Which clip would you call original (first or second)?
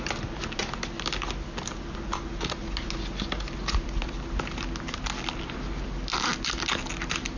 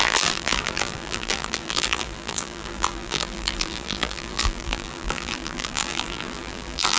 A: first